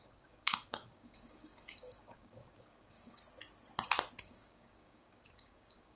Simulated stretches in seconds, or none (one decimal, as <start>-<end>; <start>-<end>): 0.0-3.2; 4.2-6.0